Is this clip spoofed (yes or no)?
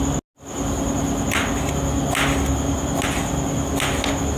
no